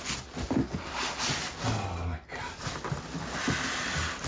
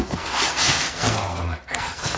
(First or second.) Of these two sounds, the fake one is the second